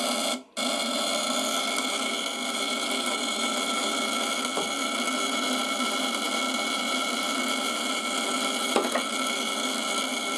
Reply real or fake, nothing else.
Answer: real